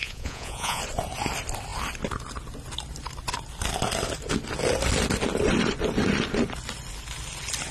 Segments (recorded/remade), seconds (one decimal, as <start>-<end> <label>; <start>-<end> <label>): 0.0-0.8 remade; 0.8-7.7 recorded